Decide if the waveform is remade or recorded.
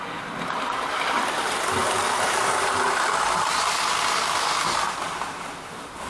recorded